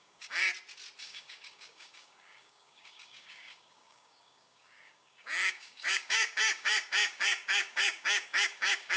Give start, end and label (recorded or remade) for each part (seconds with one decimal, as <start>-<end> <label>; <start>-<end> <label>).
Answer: 0.0-0.5 remade; 0.5-1.0 recorded; 1.0-9.0 remade